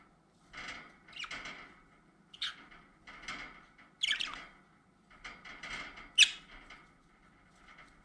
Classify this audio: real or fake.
real